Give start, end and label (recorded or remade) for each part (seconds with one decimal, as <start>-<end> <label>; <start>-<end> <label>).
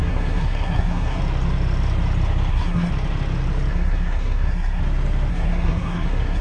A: 0.0-1.2 remade; 1.2-2.5 recorded; 2.5-2.9 remade; 2.9-3.7 recorded; 3.7-4.8 remade; 4.8-5.3 recorded; 5.3-6.4 remade